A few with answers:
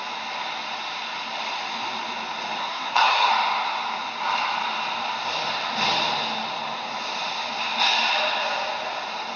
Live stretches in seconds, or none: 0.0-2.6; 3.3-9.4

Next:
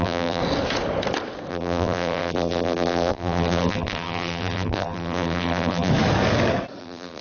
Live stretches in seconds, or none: 0.4-1.5; 5.9-6.8

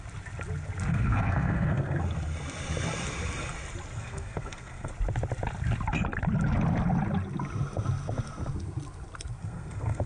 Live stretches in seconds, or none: 0.0-0.9; 2.0-4.0; 4.9-9.4

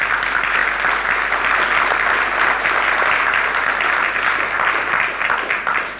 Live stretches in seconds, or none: 0.0-6.0

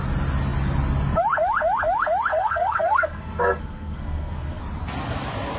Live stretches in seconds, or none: 0.0-2.3; 4.6-5.6

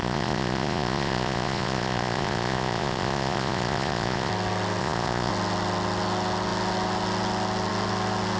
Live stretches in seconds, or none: 4.3-4.8; 5.3-8.4

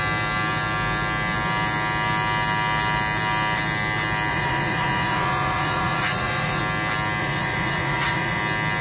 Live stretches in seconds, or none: 0.0-4.3; 6.6-7.2; 8.4-8.8